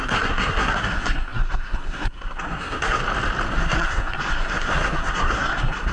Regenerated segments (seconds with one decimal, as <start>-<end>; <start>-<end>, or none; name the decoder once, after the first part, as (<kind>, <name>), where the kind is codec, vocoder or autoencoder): 0.0-3.0 (codec, SNAC); 3.5-5.9